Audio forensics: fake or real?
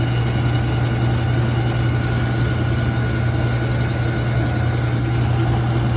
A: real